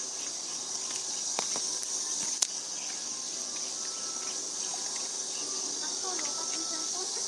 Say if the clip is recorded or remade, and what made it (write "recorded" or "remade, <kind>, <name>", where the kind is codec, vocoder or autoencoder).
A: recorded